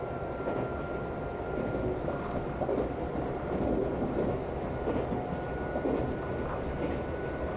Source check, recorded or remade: recorded